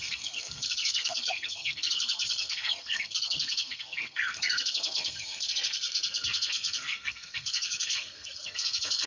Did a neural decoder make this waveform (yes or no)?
yes